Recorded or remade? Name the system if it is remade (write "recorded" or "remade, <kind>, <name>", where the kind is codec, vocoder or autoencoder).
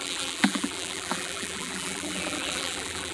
remade, vocoder, BigVGAN v2